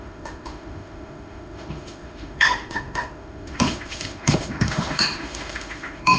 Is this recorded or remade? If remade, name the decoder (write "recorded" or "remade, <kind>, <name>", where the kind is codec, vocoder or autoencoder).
remade, autoencoder, DAC-VAE